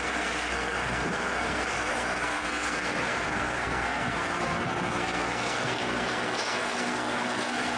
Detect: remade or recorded remade